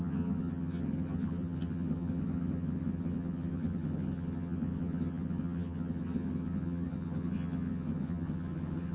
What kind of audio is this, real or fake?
fake